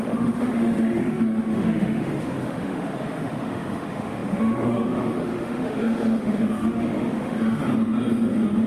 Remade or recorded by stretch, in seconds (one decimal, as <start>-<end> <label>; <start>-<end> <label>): 0.0-7.6 remade; 7.6-8.7 recorded